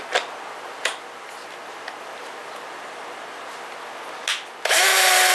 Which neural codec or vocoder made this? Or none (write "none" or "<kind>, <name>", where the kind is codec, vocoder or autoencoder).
none